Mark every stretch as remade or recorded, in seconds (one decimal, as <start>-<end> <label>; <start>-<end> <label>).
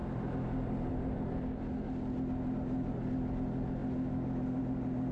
0.0-5.1 recorded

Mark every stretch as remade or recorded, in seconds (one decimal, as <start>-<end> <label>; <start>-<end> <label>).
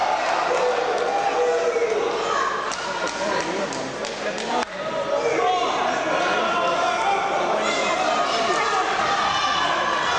0.0-10.2 recorded